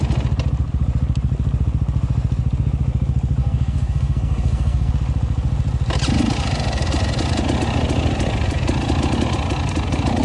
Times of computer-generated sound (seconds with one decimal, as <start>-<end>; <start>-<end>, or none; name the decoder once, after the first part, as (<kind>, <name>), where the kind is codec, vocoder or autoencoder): 3.4-4.9 (codec, SNAC)